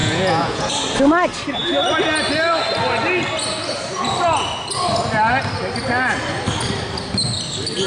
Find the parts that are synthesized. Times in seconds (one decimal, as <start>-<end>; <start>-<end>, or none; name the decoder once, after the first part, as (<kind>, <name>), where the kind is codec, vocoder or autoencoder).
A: 0.0-0.7 (vocoder, Vocos)